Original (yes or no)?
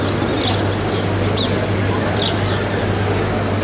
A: yes